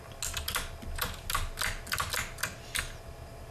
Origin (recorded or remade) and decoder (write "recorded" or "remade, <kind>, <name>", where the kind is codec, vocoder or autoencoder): recorded